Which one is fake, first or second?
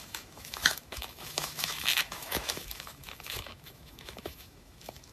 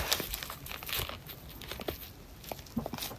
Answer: first